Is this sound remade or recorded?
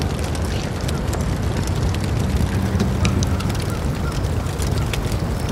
recorded